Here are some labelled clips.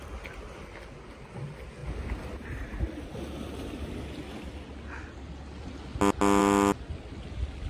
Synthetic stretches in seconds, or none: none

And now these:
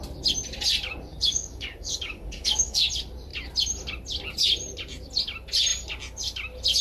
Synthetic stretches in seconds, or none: 1.1-2.9 (codec, DAC)

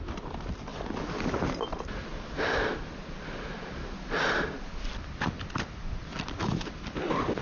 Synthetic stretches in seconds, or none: none